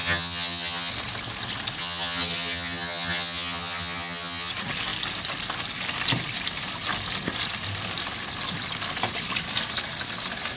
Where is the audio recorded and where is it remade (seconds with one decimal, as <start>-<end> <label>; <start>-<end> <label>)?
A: 0.0-0.9 remade; 0.9-1.8 recorded; 1.8-4.5 remade; 4.5-10.6 recorded